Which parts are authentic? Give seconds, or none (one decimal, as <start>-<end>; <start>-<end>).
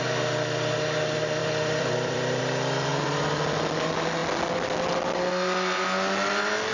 0.0-1.4; 2.4-2.9; 3.5-6.7